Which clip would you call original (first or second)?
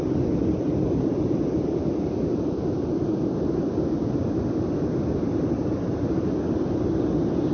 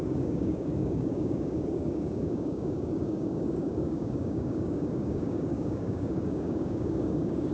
first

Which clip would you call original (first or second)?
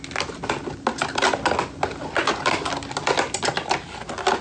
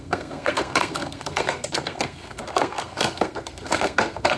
first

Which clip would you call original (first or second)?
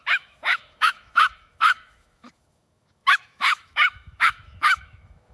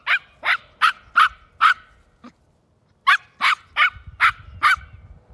second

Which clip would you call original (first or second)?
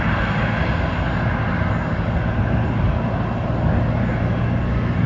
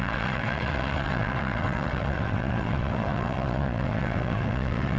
first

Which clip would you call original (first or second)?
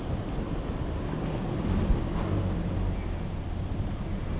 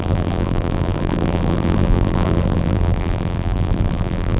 first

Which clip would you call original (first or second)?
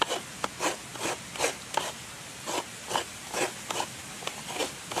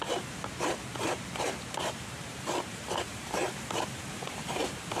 first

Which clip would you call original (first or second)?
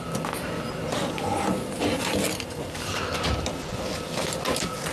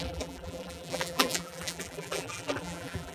first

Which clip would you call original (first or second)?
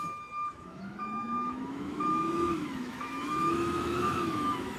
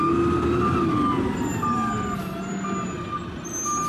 second